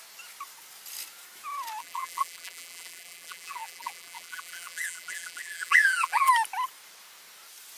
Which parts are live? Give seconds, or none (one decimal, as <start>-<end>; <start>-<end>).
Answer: 0.0-1.8; 6.3-7.8